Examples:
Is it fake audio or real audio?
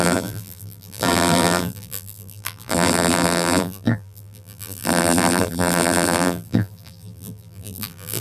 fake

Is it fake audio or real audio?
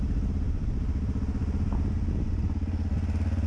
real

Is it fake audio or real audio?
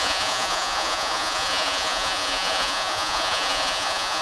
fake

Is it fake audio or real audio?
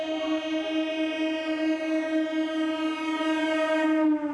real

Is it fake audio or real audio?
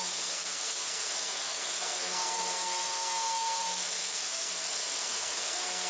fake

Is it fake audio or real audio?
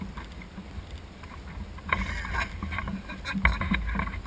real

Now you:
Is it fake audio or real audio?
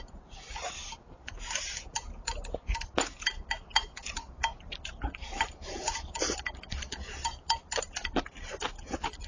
real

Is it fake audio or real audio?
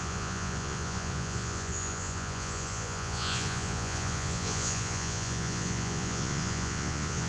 fake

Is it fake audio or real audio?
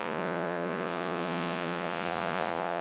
fake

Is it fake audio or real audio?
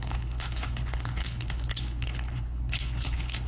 fake